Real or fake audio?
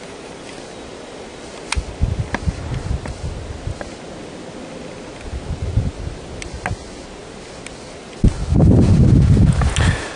real